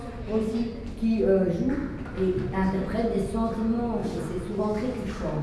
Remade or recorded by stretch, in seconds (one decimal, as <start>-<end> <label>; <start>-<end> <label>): 0.0-4.0 recorded; 4.0-4.6 remade; 4.6-5.4 recorded